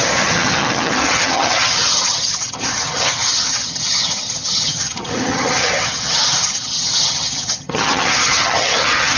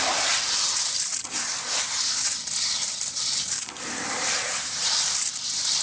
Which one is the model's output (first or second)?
first